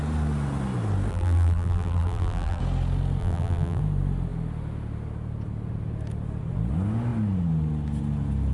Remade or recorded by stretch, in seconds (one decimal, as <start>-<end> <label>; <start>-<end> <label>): 0.0-1.1 recorded; 1.1-2.6 remade; 2.6-3.2 recorded; 3.2-3.8 remade; 3.8-8.5 recorded